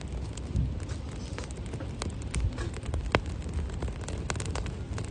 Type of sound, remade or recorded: recorded